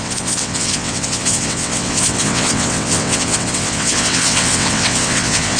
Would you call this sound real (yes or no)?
no